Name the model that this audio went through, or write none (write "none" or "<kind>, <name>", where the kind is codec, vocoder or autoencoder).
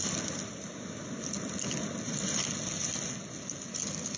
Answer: none